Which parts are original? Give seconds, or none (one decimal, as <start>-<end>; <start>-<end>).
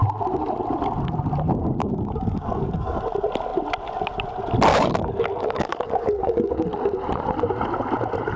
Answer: 0.0-1.8; 3.0-4.7; 6.5-8.4